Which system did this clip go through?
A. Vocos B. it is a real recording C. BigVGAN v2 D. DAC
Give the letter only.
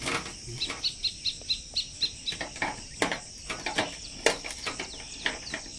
B